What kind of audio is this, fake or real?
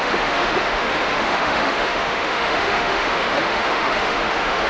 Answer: fake